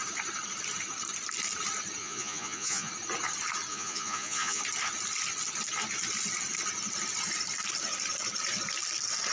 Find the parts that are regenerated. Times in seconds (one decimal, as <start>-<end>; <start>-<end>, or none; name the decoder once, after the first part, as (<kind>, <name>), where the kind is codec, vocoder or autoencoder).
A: 2.0-2.9 (vocoder, Vocos); 3.7-4.6